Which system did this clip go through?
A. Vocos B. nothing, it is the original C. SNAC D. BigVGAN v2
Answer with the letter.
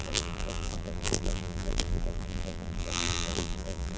D